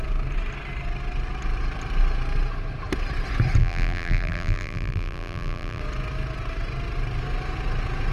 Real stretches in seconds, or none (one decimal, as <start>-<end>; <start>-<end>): 0.0-3.6; 5.8-8.1